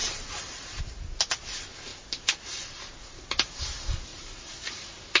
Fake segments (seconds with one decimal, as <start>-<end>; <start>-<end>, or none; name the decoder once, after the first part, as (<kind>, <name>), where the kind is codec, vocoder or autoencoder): 0.0-0.8 (vocoder, BigVGAN v2); 4.1-5.2